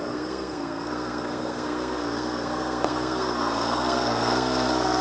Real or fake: fake